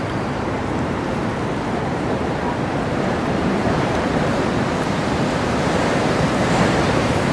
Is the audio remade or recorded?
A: remade